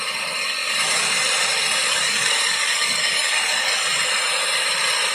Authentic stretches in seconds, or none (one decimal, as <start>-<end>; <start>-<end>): 0.0-1.8; 3.7-5.1